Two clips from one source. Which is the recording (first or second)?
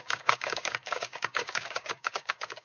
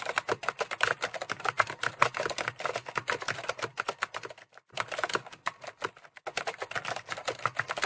second